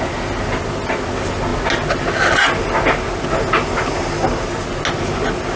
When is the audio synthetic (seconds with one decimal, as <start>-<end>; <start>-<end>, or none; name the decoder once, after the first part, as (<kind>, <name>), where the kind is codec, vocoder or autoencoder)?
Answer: none